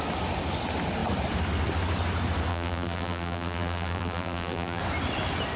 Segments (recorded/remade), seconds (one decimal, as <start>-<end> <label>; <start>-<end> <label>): 0.0-2.5 recorded; 2.5-4.8 remade; 4.8-5.6 recorded